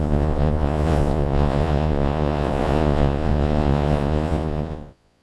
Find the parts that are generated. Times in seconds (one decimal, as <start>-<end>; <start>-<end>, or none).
0.0-5.2